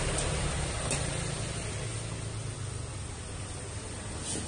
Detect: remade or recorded recorded